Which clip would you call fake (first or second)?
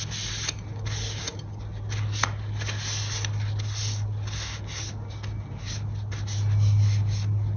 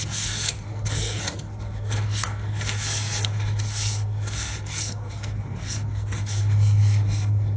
second